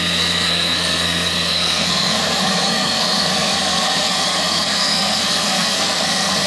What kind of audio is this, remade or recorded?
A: remade